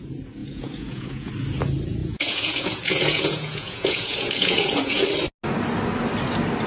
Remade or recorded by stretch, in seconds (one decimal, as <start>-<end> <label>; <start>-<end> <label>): 0.0-0.4 recorded; 0.4-1.3 remade; 1.3-2.0 recorded; 2.0-5.0 remade; 5.0-6.7 recorded